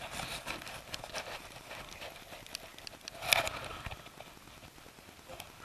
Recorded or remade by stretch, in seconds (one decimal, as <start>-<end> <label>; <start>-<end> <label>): 0.0-5.6 recorded